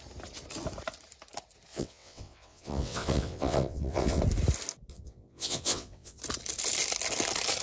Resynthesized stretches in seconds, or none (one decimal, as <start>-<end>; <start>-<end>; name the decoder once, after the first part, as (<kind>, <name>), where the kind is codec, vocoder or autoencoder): 1.7-4.2 (vocoder, WaveNeXt); 4.9-6.2